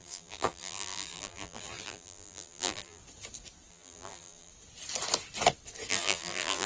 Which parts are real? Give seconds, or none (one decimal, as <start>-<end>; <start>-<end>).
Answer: 3.0-3.7; 4.5-5.9